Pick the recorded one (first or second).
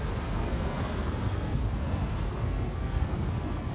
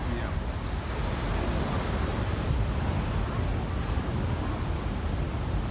second